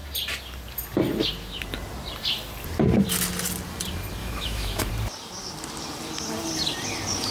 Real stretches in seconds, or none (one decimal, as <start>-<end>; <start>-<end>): 0.0-4.2; 4.9-7.3